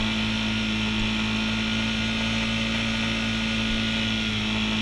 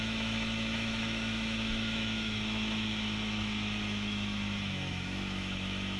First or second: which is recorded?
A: first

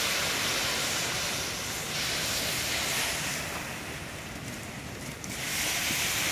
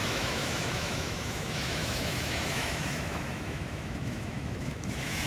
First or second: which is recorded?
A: first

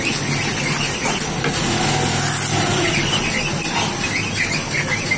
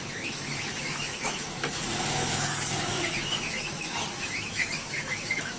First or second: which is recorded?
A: first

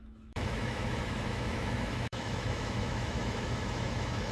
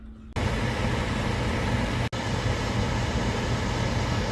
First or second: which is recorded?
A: second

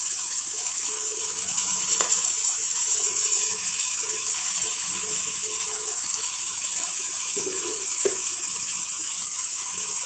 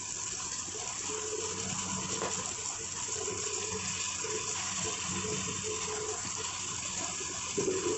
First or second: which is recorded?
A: second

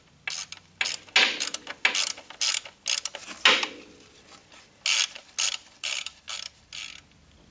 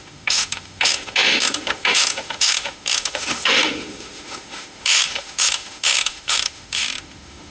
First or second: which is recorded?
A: first